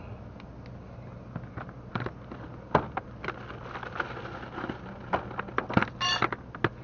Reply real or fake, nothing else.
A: real